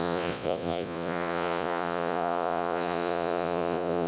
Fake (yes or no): yes